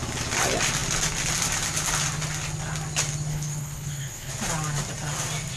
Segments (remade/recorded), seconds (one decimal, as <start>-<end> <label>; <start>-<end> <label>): 0.0-3.3 recorded; 3.3-4.3 remade; 4.3-5.6 recorded